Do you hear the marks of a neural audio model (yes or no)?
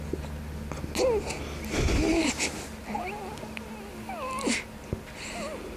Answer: no